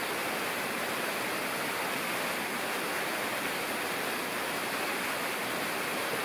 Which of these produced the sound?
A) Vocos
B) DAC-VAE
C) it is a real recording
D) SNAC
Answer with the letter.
C